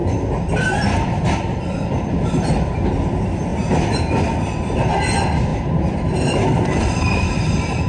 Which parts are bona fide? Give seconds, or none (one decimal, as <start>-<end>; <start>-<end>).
0.0-5.5

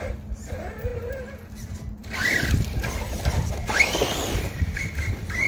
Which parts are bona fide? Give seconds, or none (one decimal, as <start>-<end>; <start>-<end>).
0.0-2.0

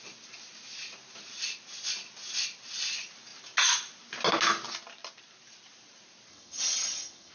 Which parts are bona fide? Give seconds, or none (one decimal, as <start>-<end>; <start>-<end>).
0.0-6.3

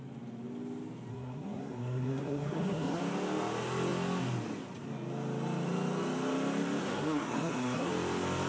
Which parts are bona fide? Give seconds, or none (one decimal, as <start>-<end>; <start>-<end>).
0.0-1.1; 3.0-6.8; 7.9-8.5

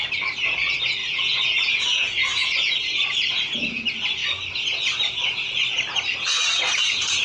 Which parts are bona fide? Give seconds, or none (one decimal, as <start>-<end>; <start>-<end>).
0.0-1.0; 2.8-7.2

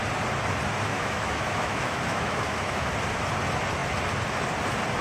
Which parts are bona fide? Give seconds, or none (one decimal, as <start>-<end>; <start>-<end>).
0.0-0.9; 2.9-5.0

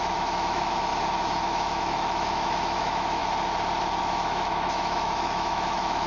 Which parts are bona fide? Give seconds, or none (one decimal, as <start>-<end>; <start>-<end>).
0.9-1.4; 3.2-4.0

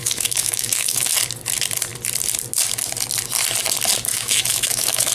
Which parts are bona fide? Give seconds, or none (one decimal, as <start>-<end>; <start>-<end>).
1.1-4.1